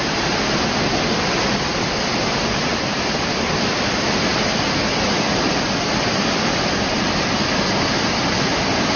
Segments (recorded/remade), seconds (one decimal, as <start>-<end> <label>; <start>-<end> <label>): 0.0-1.7 remade; 1.7-2.4 recorded; 2.4-4.3 remade; 4.3-4.9 recorded; 4.9-9.0 remade